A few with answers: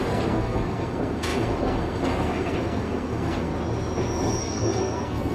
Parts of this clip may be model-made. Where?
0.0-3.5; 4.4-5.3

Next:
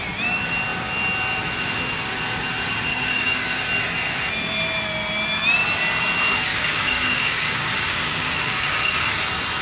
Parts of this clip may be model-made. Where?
2.9-3.6; 6.5-9.2

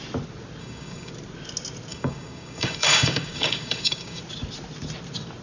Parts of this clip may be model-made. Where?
0.6-1.1; 1.9-4.2

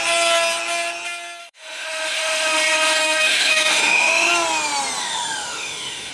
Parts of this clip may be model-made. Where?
1.4-4.3; 5.0-6.1

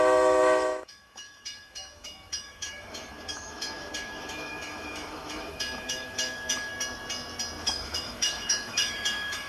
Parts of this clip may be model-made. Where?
0.0-6.7; 7.6-9.5